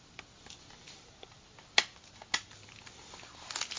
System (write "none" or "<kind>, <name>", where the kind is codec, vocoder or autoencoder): none